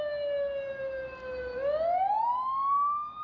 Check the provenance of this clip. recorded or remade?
recorded